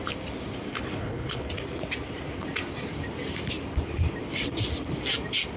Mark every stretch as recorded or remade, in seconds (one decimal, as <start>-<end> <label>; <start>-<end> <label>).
0.0-0.7 recorded; 0.7-1.5 remade; 1.5-5.6 recorded

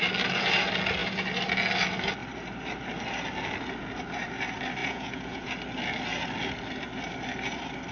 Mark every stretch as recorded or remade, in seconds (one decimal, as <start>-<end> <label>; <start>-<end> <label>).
0.0-4.8 recorded; 4.8-5.5 remade; 5.5-7.9 recorded

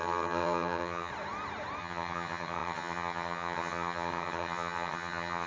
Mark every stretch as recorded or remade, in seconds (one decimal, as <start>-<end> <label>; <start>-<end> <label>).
0.0-1.1 remade; 1.1-1.8 recorded; 1.8-5.5 remade